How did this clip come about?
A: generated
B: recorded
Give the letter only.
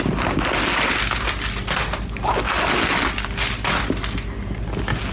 B